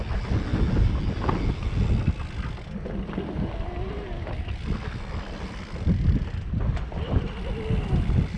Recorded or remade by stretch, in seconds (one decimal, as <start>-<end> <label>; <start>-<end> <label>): 0.0-8.4 recorded